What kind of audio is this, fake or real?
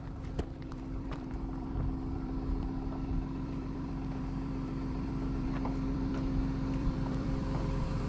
fake